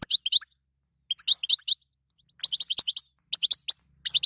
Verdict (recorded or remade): recorded